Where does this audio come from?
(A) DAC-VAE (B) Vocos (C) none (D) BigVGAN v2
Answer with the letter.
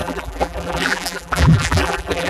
D